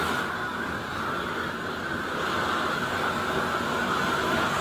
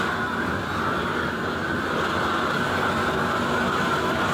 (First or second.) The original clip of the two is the second